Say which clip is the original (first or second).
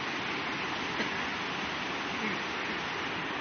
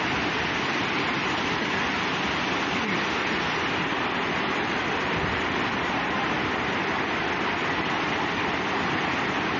first